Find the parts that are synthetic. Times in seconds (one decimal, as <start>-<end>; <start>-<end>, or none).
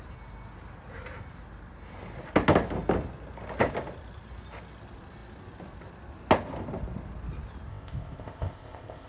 7.7-9.1